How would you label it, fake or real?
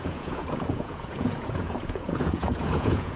fake